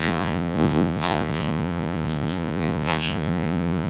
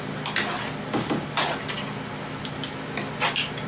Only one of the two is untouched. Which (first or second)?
second